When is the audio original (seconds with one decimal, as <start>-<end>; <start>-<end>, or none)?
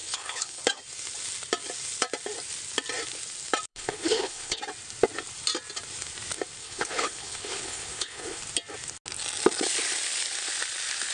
0.6-3.7; 4.6-6.6; 8.4-11.1